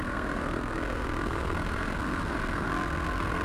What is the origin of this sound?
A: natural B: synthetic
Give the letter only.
B